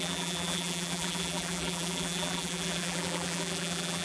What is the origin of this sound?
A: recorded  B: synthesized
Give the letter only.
B